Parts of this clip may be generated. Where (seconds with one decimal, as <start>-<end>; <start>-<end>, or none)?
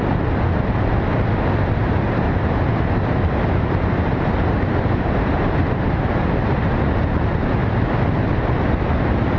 1.8-6.7; 7.6-8.8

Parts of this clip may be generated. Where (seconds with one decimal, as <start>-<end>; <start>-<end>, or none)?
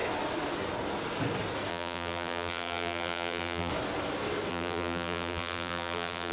1.7-3.7; 4.5-6.3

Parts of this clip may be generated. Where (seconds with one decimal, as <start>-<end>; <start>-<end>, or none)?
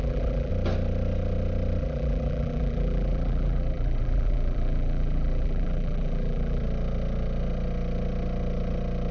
0.0-0.5; 1.8-6.6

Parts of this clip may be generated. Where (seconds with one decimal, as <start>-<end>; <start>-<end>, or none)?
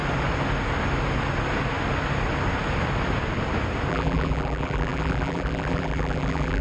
3.9-6.6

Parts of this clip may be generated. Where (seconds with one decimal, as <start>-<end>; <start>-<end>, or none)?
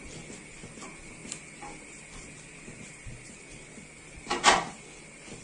none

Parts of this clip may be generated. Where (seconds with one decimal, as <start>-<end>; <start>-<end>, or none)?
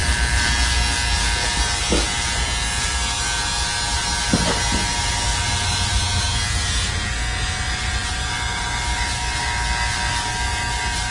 0.0-0.5; 5.3-6.0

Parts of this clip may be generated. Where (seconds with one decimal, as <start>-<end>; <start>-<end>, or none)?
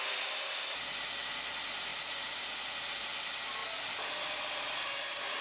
1.9-3.0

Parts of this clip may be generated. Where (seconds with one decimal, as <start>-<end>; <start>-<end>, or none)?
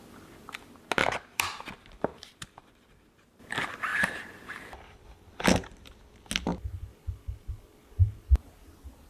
1.0-1.6; 2.1-3.5; 3.9-4.6